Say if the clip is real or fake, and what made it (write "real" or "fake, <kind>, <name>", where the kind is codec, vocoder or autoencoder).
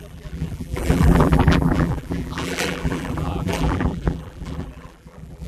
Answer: fake, vocoder, BigVGAN v2